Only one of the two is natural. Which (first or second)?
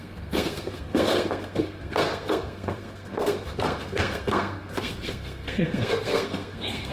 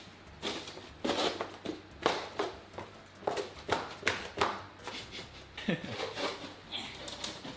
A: second